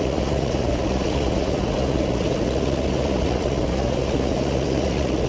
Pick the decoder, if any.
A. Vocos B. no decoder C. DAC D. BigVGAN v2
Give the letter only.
A